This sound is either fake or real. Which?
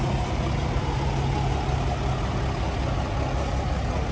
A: real